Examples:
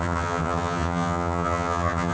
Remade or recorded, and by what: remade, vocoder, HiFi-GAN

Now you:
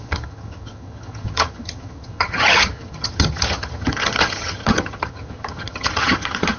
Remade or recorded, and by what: remade, vocoder, HiFi-GAN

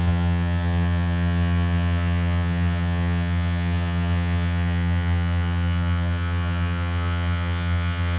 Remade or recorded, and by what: remade, vocoder, HiFi-GAN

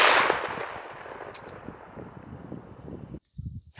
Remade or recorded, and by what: recorded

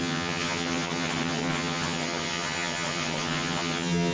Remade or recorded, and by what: remade, vocoder, HiFi-GAN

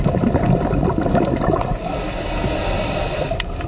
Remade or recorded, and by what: recorded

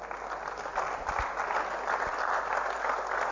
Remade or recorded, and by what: recorded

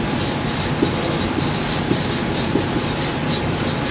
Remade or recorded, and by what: recorded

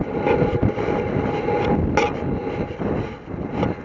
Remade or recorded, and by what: recorded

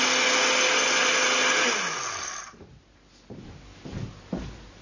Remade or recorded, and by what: recorded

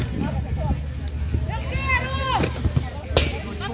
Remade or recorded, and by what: recorded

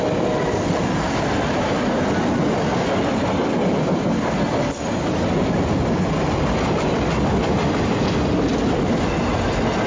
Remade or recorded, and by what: recorded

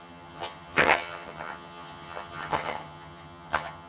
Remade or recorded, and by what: remade, vocoder, HiFi-GAN